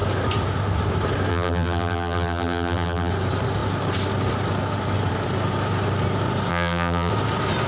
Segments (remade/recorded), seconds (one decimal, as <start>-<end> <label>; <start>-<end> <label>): 0.0-1.3 recorded; 1.3-3.1 remade; 3.1-6.5 recorded; 6.5-7.1 remade; 7.1-7.7 recorded